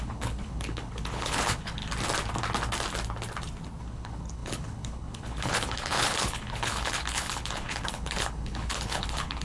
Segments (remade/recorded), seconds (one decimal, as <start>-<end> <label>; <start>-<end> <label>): 0.0-1.8 remade; 1.8-3.8 recorded; 3.8-9.4 remade